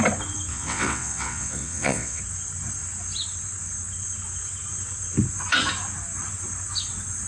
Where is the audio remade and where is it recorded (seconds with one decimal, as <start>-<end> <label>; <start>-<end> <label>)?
0.0-0.5 recorded; 0.5-2.2 remade; 2.2-7.3 recorded